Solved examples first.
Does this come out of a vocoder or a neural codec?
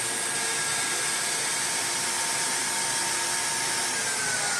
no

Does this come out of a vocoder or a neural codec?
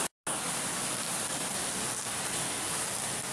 no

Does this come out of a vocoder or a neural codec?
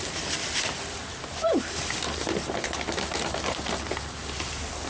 no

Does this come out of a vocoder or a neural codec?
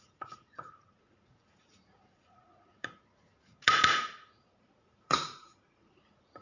yes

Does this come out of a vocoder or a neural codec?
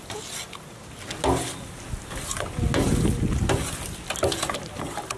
no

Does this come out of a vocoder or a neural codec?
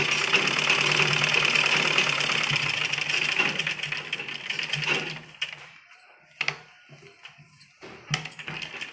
no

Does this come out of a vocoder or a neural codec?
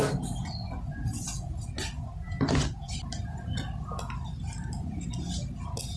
no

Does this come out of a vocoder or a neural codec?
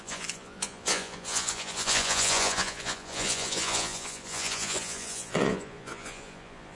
yes